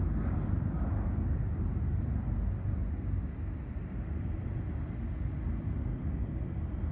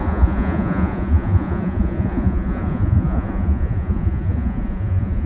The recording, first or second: first